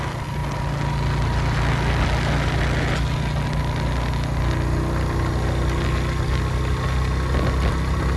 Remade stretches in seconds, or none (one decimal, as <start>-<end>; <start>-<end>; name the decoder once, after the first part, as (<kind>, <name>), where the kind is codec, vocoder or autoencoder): none